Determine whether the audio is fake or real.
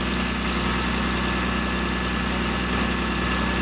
real